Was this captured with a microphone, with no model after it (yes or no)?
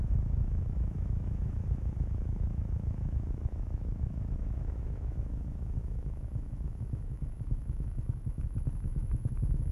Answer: no